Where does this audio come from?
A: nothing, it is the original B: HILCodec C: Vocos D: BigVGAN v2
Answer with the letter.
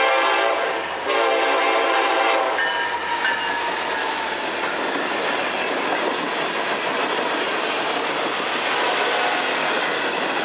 A